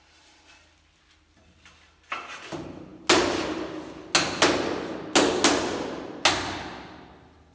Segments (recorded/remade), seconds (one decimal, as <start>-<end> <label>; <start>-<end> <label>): 0.0-7.5 recorded